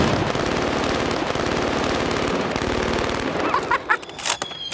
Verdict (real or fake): real